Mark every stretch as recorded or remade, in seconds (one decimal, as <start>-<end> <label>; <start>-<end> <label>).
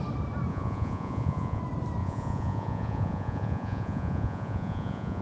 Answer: 0.0-0.5 recorded; 0.5-1.6 remade; 1.6-2.0 recorded; 2.0-5.2 remade